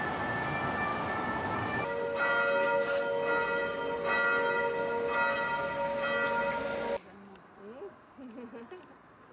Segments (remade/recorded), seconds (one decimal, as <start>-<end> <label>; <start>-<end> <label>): 0.0-0.9 recorded; 0.9-1.8 remade; 1.8-9.3 recorded